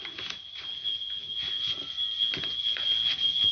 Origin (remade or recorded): recorded